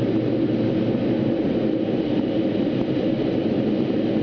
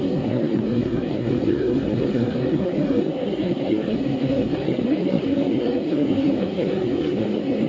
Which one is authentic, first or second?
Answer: first